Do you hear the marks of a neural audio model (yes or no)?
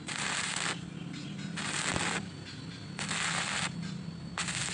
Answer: no